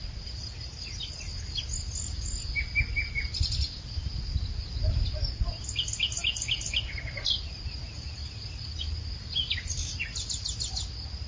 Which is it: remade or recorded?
recorded